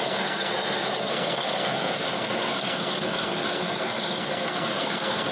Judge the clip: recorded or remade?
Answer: remade